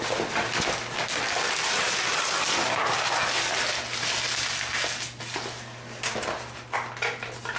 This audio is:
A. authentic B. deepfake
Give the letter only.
A